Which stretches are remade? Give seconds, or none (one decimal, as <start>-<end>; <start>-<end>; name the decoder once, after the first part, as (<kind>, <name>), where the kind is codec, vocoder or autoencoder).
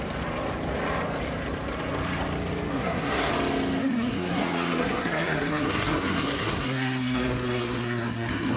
2.7-3.3 (codec, SNAC); 3.8-8.6